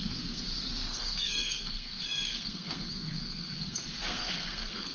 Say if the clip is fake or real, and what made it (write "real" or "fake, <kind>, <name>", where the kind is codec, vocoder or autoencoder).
fake, codec, SNAC